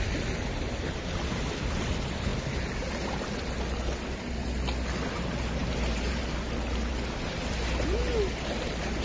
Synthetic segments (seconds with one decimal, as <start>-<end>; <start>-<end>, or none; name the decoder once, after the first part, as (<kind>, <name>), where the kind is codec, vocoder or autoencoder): 5.6-6.1 (vocoder, BigVGAN v2)